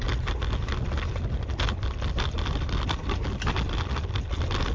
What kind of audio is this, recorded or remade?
recorded